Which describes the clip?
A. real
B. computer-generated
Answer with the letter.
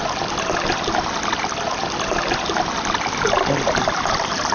A